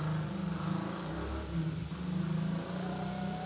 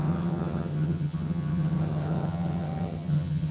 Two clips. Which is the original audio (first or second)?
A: first